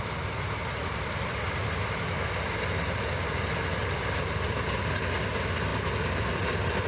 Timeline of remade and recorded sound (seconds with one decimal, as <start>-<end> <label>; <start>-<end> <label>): 0.0-0.8 recorded; 0.8-3.1 remade; 3.1-3.8 recorded; 3.8-4.5 remade; 4.5-5.7 recorded; 5.7-6.4 remade; 6.4-6.9 recorded